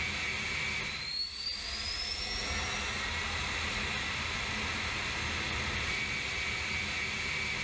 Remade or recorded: recorded